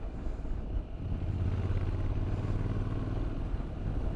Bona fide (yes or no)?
yes